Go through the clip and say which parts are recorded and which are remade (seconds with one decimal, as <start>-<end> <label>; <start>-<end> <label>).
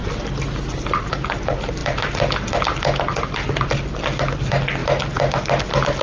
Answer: 0.0-6.0 recorded